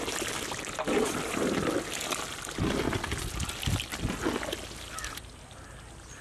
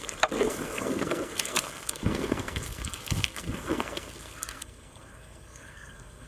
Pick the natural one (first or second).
first